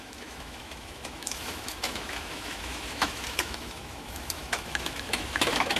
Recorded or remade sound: remade